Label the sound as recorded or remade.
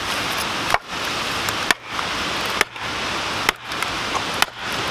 recorded